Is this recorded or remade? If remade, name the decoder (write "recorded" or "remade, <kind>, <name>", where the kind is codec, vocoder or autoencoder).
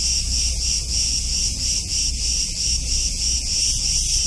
recorded